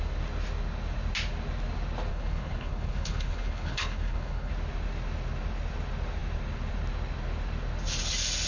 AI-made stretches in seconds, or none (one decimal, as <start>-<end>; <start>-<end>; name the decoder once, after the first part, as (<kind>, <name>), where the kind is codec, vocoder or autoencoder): 2.1-4.5 (codec, HILCodec)